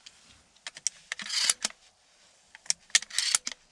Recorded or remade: recorded